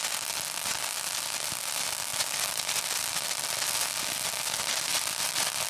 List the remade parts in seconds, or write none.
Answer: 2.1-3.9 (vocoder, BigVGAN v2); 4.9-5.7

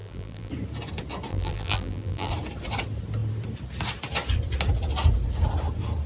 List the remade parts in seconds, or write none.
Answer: 0.0-0.5 (vocoder, BigVGAN v2); 1.3-2.3

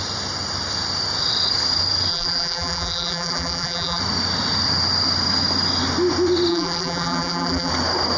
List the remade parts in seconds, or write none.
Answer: 2.1-4.0 (vocoder, BigVGAN v2); 6.5-7.7

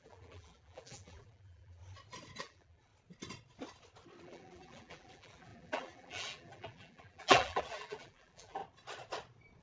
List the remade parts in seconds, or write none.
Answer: 0.0-1.8 (vocoder, BigVGAN v2); 2.4-2.9; 4.2-8.6